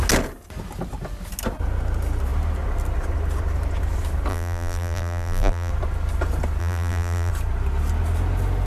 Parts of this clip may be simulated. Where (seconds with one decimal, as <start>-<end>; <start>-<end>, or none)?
4.3-5.7; 6.6-7.3